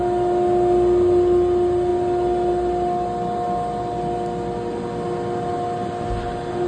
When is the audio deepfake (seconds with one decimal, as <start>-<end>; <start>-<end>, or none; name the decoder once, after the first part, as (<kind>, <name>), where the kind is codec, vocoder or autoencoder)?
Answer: none

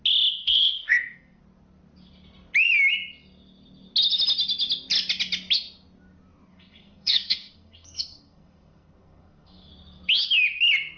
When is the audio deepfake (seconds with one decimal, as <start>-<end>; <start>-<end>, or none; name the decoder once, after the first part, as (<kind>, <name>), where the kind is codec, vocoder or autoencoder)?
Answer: 0.4-1.4 (codec, SNAC); 6.5-9.7

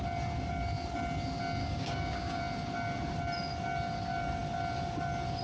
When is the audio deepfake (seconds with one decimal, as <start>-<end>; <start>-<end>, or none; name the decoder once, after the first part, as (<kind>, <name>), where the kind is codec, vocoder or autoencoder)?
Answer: 1.6-2.4 (codec, DAC)

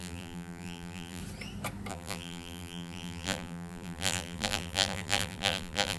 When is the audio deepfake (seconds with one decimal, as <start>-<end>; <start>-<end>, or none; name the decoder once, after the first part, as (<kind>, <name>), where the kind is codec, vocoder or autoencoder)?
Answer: 0.0-1.2 (vocoder, BigVGAN v2); 1.9-6.0

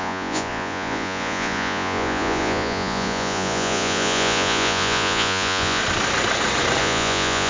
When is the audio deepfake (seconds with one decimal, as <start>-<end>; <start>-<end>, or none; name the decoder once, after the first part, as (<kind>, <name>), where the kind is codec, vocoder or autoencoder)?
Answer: 0.0-5.8 (vocoder, Vocos); 6.8-7.5